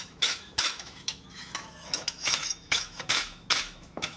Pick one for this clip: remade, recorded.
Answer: remade